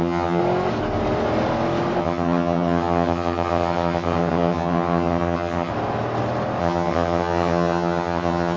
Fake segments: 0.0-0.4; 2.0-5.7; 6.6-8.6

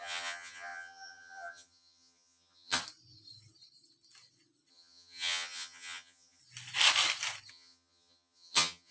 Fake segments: 0.0-2.8; 4.7-6.4; 7.5-8.9

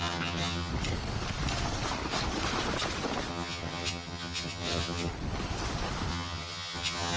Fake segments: 0.0-0.7; 3.3-5.1; 6.1-7.2

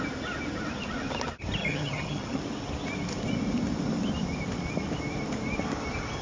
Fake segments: 1.6-2.4